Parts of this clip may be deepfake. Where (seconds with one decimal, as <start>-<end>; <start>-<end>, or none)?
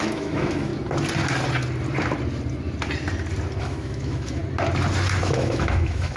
0.0-0.7; 3.6-4.4; 5.2-6.2